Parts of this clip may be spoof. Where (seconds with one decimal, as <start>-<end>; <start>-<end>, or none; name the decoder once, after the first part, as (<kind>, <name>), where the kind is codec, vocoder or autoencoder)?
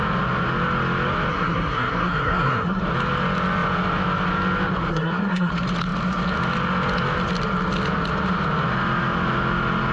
1.3-2.8 (codec, SNAC); 4.9-5.5